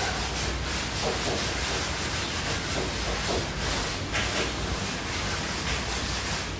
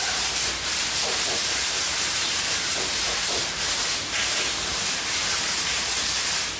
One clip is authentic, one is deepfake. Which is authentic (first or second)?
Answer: first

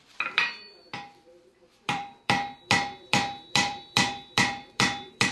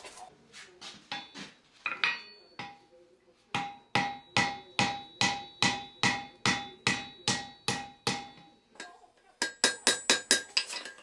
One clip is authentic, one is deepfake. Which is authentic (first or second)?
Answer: second